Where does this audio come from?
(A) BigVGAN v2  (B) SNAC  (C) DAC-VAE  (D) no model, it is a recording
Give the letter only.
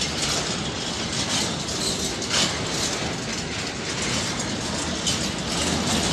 D